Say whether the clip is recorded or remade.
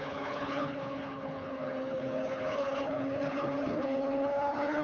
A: remade